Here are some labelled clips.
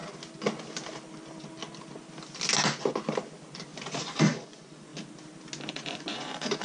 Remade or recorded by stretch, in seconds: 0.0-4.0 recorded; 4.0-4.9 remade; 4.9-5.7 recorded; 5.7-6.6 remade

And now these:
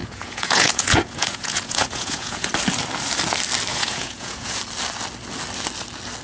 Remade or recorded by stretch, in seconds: 0.0-2.5 remade; 2.5-3.7 recorded; 3.7-4.6 remade; 4.6-6.2 recorded

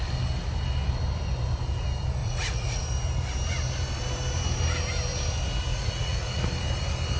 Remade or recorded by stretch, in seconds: 0.0-2.2 recorded; 2.2-2.8 remade; 2.8-5.7 recorded; 5.7-6.4 remade; 6.4-7.2 recorded

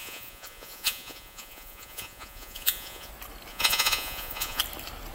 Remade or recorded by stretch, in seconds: 0.0-3.1 remade; 3.1-3.5 recorded; 3.5-4.6 remade; 4.6-5.1 recorded